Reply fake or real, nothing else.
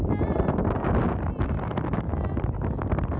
real